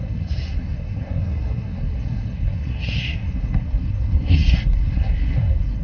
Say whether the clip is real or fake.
fake